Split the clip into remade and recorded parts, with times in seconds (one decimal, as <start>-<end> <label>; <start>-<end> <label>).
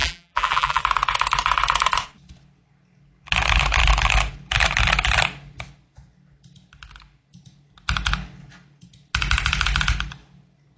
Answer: 0.0-0.8 remade; 0.8-10.8 recorded